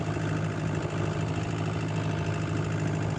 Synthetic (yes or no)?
no